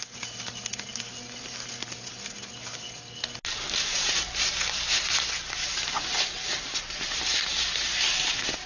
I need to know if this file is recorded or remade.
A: recorded